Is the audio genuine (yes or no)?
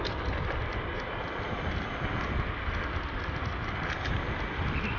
yes